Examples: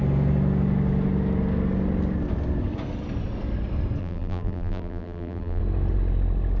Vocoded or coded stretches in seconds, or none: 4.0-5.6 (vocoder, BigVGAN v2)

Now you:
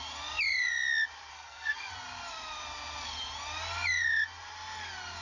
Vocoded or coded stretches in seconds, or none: 1.3-1.9 (codec, SNAC)

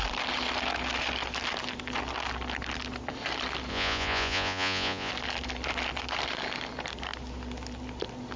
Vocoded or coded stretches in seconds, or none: 3.7-5.1 (vocoder, Vocos)

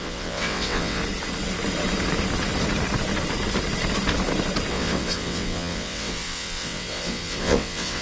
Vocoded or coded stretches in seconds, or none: 0.0-1.0 (vocoder, WaveNeXt); 4.7-8.0